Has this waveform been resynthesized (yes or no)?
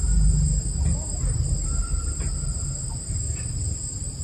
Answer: no